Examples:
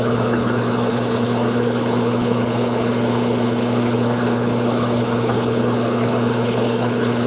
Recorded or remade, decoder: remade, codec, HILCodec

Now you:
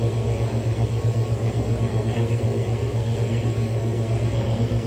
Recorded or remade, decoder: remade, codec, SNAC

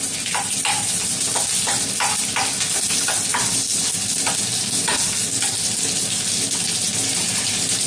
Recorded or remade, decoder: recorded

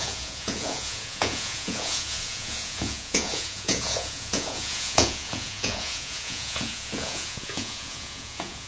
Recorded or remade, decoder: remade, vocoder, Vocos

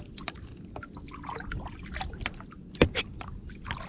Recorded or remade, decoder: recorded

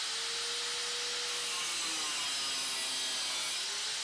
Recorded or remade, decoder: recorded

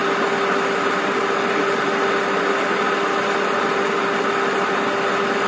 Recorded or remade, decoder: recorded